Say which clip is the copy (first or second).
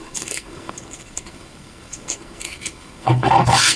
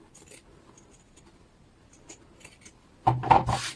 first